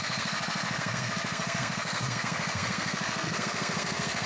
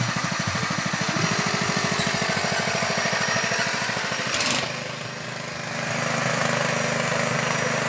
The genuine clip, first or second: second